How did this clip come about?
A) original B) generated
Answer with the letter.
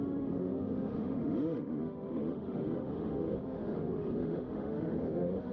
B